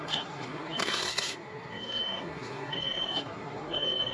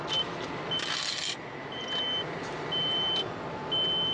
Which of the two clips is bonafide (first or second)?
second